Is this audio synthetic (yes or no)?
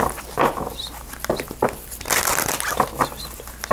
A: no